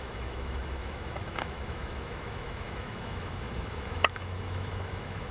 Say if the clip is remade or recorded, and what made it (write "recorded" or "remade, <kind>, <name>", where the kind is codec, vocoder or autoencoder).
remade, autoencoder, DAC-VAE